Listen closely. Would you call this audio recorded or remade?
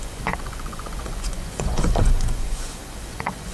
remade